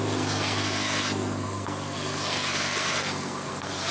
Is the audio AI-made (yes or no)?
yes